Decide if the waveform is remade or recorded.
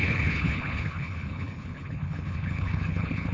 remade